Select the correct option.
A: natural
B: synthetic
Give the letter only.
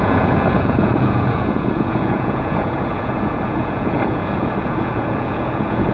B